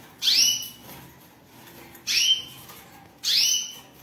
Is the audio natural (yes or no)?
yes